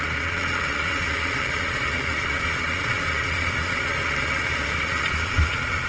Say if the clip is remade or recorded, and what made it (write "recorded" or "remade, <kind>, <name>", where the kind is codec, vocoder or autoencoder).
remade, vocoder, Vocos